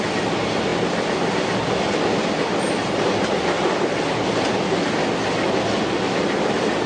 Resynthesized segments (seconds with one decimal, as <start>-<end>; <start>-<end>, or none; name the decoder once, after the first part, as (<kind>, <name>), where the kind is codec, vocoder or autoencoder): none